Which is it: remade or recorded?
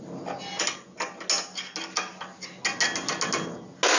recorded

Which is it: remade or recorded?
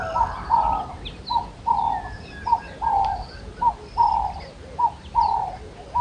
recorded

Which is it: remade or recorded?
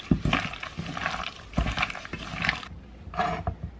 recorded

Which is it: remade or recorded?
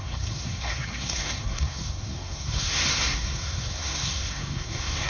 remade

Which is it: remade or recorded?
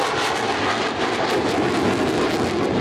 recorded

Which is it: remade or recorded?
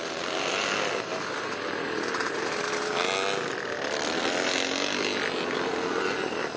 recorded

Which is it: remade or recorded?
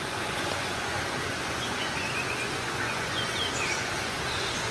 remade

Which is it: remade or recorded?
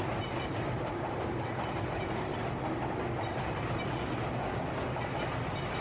recorded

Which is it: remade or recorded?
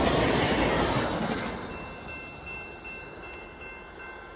recorded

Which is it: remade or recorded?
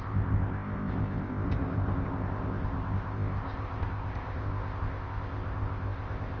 remade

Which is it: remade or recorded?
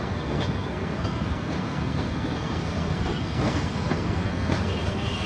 remade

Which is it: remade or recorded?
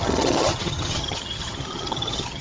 remade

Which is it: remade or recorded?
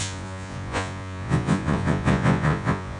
remade